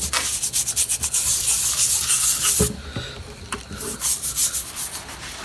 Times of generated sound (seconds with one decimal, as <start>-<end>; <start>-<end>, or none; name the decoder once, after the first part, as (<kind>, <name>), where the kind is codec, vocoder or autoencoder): none